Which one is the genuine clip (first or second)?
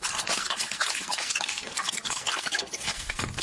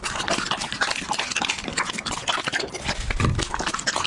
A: second